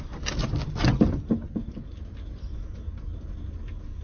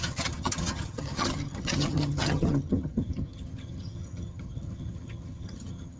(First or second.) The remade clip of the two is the second